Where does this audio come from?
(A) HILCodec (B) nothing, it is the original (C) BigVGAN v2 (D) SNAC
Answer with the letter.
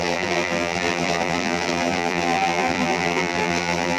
C